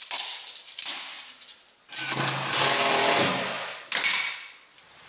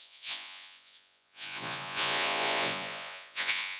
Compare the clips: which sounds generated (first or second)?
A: second